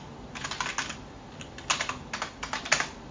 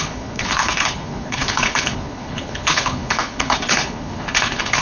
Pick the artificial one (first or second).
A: second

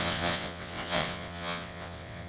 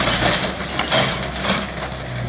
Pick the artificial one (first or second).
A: first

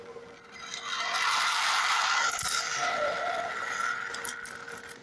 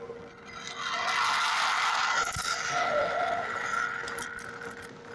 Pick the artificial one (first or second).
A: first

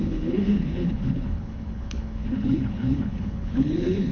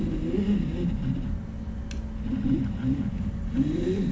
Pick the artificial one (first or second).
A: first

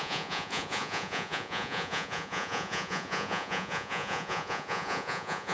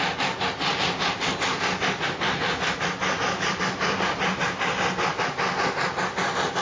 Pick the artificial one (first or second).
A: first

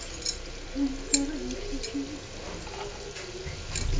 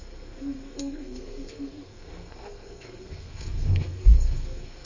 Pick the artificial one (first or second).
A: second